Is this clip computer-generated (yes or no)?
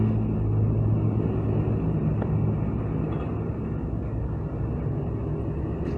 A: no